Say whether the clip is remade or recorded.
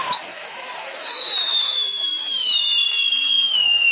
remade